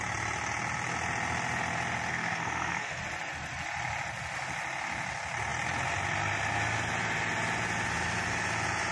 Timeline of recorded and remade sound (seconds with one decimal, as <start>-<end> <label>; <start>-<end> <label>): 0.0-2.1 recorded; 2.1-3.0 remade; 3.0-8.9 recorded